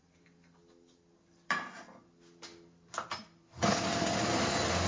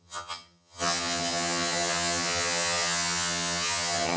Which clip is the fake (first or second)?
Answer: second